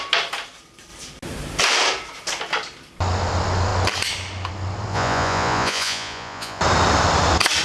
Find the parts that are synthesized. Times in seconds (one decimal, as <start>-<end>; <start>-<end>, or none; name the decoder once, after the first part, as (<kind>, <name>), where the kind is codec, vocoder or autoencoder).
4.9-6.6 (vocoder, Vocos)